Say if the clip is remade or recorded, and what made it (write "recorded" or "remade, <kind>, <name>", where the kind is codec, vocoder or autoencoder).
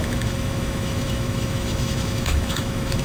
remade, autoencoder, DAC-VAE